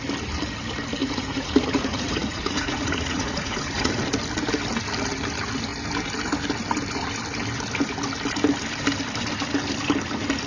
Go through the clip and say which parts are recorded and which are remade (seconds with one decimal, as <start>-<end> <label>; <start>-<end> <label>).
0.0-1.0 recorded; 1.0-3.9 remade; 3.9-10.5 recorded